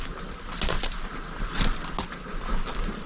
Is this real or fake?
real